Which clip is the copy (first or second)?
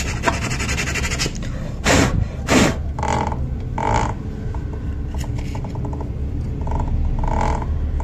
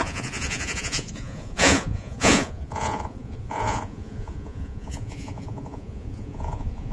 second